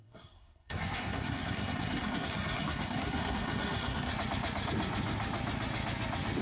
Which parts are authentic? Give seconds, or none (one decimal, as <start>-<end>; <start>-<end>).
4.1-6.4